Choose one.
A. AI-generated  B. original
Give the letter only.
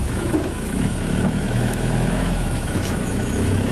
A